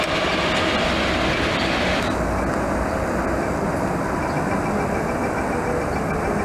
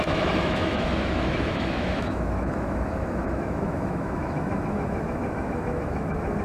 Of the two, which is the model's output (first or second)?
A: second